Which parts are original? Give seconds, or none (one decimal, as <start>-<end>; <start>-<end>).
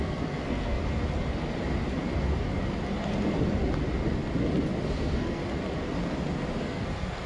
0.8-5.0; 5.4-6.6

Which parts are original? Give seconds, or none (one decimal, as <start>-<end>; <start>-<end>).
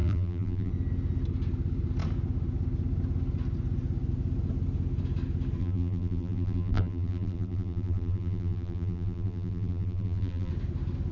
0.7-5.6; 10.5-11.1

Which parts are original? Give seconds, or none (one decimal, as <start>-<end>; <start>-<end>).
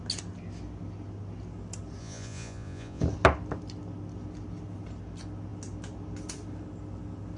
0.0-2.0; 3.0-7.4